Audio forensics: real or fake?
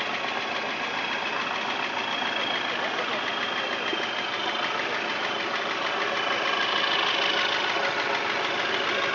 real